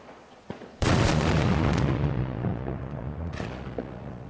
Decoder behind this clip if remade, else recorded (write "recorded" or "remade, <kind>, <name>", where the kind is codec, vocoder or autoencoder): remade, vocoder, Vocos